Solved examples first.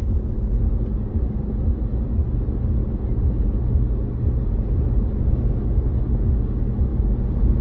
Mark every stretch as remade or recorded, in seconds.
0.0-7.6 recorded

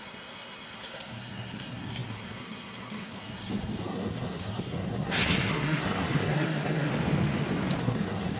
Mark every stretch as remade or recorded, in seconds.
0.0-6.9 remade; 6.9-7.8 recorded; 7.8-8.4 remade

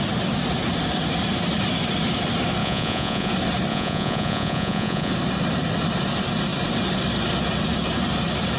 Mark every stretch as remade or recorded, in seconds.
0.0-2.6 recorded; 2.6-3.3 remade; 3.3-3.7 recorded; 3.7-5.1 remade; 5.1-8.6 recorded

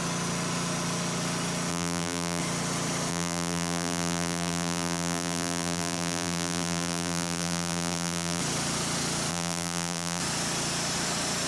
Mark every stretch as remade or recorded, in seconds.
0.0-1.7 recorded; 1.7-2.4 remade; 2.4-3.1 recorded; 3.1-8.4 remade; 8.4-9.3 recorded; 9.3-10.2 remade; 10.2-11.5 recorded

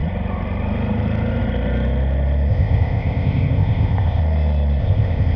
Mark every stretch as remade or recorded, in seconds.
0.0-2.5 recorded; 2.5-4.2 remade; 4.2-4.8 recorded; 4.8-5.4 remade

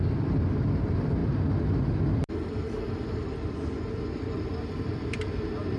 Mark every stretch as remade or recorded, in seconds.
0.0-5.8 recorded

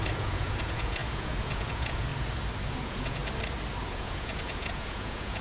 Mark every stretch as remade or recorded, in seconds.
0.0-2.1 remade; 2.1-2.7 recorded; 2.7-3.2 remade; 3.2-3.9 recorded; 3.9-5.4 remade